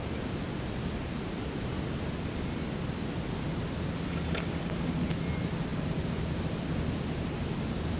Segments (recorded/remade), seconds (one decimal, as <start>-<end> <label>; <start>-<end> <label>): 0.0-8.0 recorded